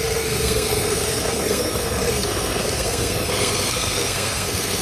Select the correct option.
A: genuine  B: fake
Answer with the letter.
B